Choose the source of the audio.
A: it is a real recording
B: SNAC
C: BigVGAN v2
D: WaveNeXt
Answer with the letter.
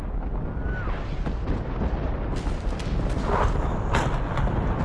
A